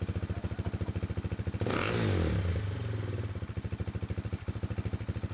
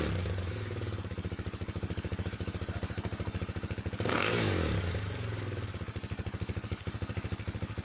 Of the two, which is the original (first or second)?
first